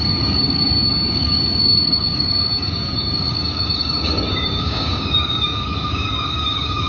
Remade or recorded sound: remade